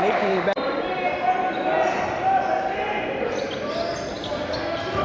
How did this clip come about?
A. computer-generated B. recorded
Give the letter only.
B